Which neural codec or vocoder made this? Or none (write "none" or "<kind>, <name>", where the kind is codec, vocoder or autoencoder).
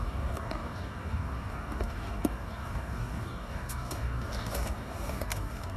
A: codec, DAC